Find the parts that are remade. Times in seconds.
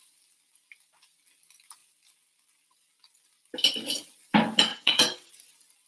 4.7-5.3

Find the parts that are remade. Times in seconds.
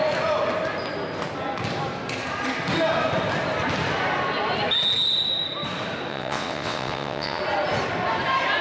6.1-7.4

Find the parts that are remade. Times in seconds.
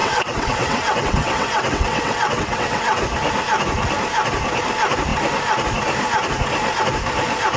0.0-3.0